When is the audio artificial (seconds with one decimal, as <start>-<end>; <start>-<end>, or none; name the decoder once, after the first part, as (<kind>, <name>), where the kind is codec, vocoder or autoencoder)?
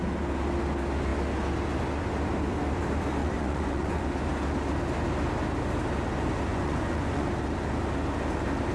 3.2-4.0 (vocoder, Vocos); 6.5-7.3